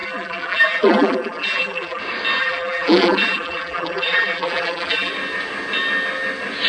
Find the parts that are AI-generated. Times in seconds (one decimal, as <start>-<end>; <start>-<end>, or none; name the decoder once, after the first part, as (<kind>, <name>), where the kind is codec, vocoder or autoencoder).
0.0-2.0 (vocoder, BigVGAN v2); 2.4-5.1